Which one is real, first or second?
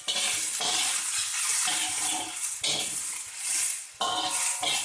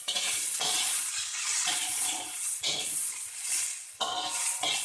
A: first